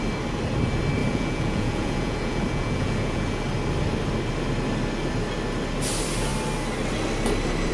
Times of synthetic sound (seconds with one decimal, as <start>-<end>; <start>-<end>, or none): 1.0-3.4